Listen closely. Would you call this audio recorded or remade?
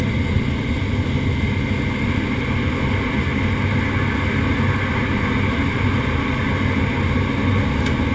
recorded